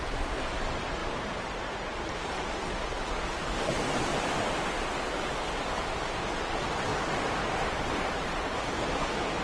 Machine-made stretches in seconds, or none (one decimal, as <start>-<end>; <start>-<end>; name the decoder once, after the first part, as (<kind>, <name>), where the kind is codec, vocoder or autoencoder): 0.0-4.1 (vocoder, BigVGAN v2); 5.7-6.9; 7.4-9.4